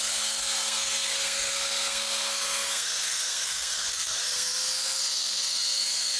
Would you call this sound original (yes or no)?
no